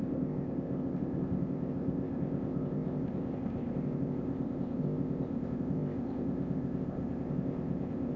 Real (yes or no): no